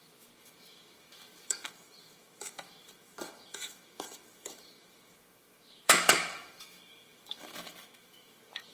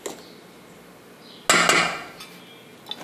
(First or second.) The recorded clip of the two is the second